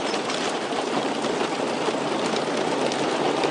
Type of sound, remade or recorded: recorded